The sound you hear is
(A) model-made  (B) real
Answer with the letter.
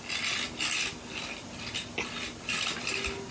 B